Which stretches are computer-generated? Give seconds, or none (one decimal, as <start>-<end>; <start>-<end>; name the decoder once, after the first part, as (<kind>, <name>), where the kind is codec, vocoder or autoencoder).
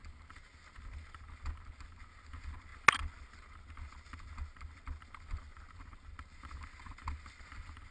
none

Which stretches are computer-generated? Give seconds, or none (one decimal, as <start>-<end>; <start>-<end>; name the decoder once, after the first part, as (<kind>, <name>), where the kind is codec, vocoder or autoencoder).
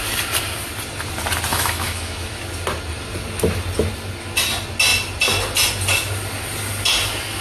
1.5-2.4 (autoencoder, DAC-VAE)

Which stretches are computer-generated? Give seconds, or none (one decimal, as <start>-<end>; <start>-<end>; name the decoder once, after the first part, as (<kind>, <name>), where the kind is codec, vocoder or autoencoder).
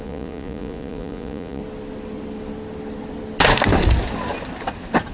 0.0-1.6 (vocoder, Vocos)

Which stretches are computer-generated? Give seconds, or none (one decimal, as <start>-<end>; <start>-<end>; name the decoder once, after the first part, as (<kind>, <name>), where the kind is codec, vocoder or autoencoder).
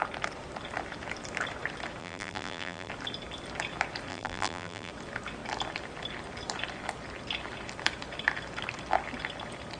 2.0-2.9 (vocoder, BigVGAN v2); 4.1-4.9